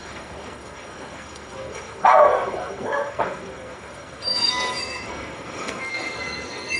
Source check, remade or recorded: remade